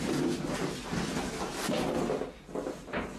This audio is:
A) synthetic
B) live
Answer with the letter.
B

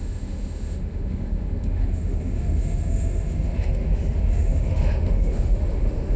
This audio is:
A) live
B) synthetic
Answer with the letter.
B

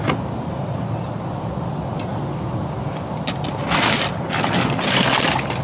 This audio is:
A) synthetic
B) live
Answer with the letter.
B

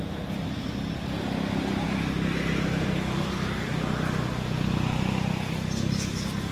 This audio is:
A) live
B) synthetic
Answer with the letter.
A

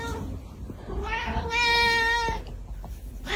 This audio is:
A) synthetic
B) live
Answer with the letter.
B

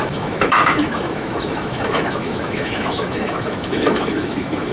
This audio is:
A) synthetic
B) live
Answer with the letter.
A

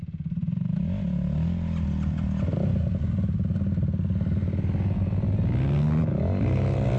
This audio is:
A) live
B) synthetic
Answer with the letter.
A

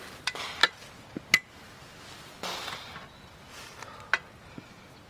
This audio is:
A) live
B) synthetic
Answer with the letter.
A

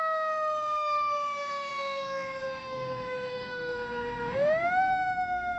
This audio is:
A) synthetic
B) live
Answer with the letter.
A